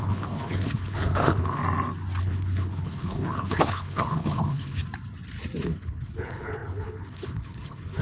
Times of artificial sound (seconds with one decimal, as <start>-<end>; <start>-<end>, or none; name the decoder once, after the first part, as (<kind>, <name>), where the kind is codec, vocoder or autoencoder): 0.0-1.6 (codec, HILCodec); 2.2-4.8; 5.6-8.0